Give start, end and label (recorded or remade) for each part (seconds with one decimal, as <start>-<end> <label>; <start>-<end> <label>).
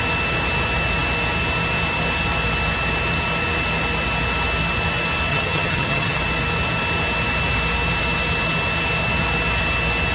0.0-5.3 recorded; 5.3-6.2 remade; 6.2-10.1 recorded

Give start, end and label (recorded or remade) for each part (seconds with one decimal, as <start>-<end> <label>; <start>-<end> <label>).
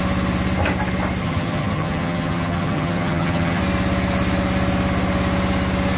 0.0-1.2 recorded; 1.2-3.6 remade; 3.6-6.0 recorded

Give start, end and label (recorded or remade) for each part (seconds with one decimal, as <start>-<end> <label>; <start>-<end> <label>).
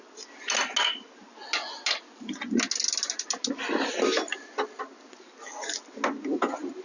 0.0-6.8 recorded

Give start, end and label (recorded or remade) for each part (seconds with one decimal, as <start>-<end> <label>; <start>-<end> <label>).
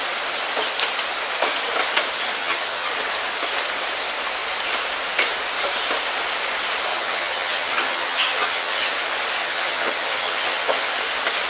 0.0-2.4 recorded; 2.4-2.9 remade; 2.9-6.9 recorded; 6.9-8.9 remade; 8.9-9.4 recorded; 9.4-10.9 remade; 10.9-11.5 recorded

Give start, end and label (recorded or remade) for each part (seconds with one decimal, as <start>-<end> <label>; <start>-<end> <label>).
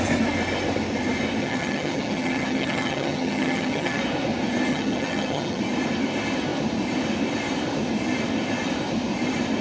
0.0-1.4 recorded; 1.4-4.0 remade; 4.0-4.7 recorded; 4.7-5.6 remade; 5.6-9.6 recorded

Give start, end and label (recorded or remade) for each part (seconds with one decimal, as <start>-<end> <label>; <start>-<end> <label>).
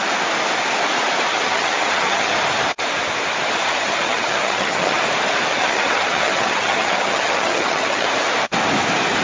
0.0-1.3 recorded; 1.3-2.3 remade; 2.3-3.7 recorded; 3.7-5.0 remade; 5.0-5.5 recorded; 5.5-8.1 remade; 8.1-9.2 recorded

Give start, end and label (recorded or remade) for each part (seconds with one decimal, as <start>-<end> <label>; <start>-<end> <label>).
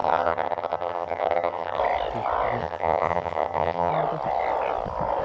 0.0-1.8 remade; 1.8-2.6 recorded; 2.6-3.9 remade; 3.9-5.2 recorded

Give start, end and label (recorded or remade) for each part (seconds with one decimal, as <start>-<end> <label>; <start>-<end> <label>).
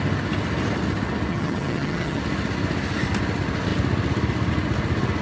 0.0-1.3 recorded; 1.3-2.2 remade; 2.2-5.2 recorded